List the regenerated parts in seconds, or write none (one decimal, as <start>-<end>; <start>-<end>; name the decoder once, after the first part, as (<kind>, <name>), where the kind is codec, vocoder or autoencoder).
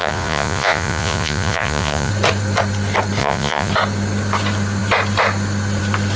0.0-2.1 (vocoder, Vocos); 3.2-3.7